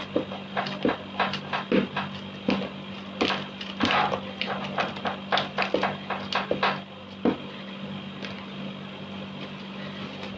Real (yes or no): yes